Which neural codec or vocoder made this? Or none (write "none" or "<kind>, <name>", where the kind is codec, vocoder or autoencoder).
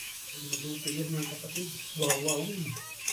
autoencoder, DAC-VAE